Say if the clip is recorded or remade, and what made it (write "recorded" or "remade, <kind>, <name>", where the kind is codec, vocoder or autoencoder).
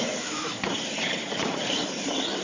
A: remade, vocoder, BigVGAN v2